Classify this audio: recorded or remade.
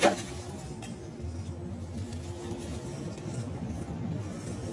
recorded